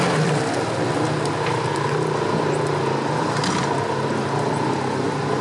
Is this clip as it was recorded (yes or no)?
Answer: yes